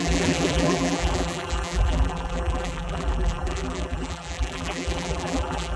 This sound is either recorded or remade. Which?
remade